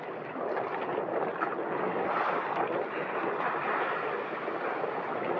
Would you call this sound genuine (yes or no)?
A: yes